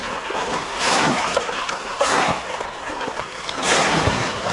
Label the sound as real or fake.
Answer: fake